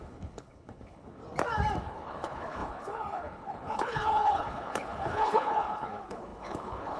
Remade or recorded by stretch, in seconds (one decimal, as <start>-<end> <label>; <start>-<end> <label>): 0.0-1.2 remade; 1.2-1.8 recorded; 1.8-7.0 remade